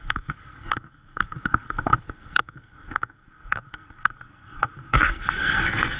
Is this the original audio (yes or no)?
no